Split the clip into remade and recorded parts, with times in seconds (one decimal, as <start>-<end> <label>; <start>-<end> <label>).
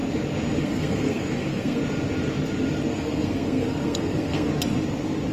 0.0-0.6 recorded; 0.6-1.8 remade; 1.8-2.9 recorded; 2.9-4.5 remade; 4.5-5.3 recorded